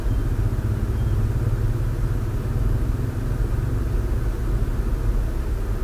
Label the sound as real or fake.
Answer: real